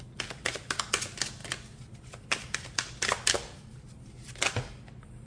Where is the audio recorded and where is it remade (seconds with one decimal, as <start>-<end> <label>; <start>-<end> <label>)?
0.0-5.3 recorded